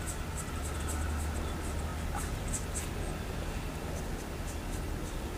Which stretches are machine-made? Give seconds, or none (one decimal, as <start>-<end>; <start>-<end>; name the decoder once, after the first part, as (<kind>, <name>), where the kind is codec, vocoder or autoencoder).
none